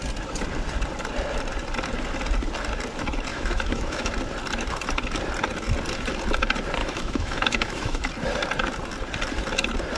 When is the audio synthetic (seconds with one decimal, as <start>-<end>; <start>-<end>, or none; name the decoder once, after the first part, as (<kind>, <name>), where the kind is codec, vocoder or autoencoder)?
3.3-4.1 (autoencoder, DAC-VAE); 6.8-8.1